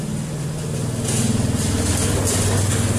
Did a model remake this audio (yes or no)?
no